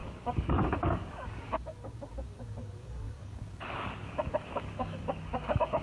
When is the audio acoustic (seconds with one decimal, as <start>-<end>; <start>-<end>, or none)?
none